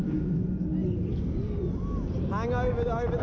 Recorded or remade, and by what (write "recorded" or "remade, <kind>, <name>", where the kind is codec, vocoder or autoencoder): recorded